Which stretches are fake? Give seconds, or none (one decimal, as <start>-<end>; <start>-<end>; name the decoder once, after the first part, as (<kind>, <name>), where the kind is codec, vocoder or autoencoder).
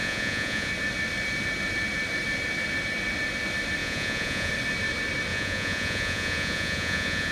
0.0-0.7 (vocoder, Vocos); 3.8-4.5; 5.3-7.3